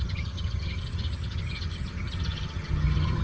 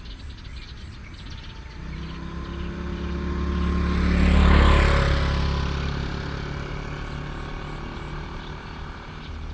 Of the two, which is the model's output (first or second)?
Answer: first